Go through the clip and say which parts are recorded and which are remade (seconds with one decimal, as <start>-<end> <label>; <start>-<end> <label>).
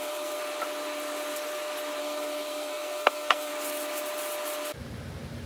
0.0-0.4 remade; 0.4-2.0 recorded; 2.0-3.5 remade; 3.5-5.5 recorded